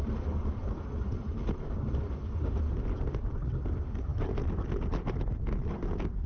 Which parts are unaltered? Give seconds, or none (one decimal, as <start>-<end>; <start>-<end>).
0.0-6.3